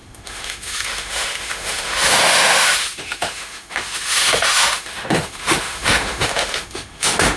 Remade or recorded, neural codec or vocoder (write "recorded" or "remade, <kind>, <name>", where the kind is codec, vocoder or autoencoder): remade, autoencoder, DAC-VAE